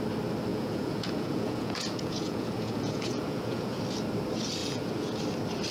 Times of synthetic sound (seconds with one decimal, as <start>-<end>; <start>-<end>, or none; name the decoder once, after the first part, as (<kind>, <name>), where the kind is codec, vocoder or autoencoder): 0.5-3.8 (vocoder, Vocos); 4.6-5.2